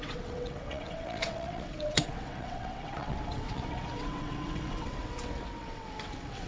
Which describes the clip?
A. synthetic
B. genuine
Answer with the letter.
A